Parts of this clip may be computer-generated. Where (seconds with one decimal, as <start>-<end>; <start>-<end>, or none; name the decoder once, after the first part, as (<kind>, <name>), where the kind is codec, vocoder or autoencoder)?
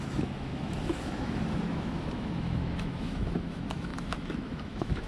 0.0-5.1 (autoencoder, DAC-VAE)